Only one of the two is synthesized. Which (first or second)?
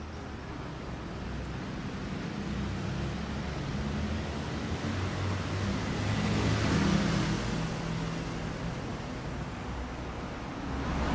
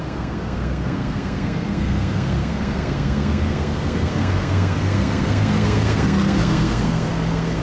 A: second